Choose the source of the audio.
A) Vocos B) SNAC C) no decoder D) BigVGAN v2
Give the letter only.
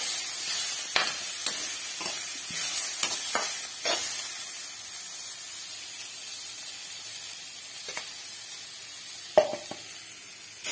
C